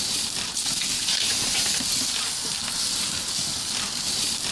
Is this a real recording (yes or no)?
yes